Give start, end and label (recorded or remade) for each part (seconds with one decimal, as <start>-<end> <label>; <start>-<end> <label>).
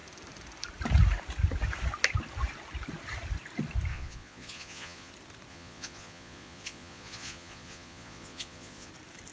0.0-3.9 recorded; 3.9-5.1 remade; 5.1-5.5 recorded; 5.5-8.9 remade; 8.9-9.3 recorded